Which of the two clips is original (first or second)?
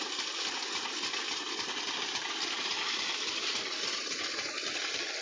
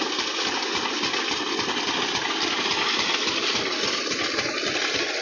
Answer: second